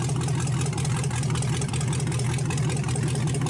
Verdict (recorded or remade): recorded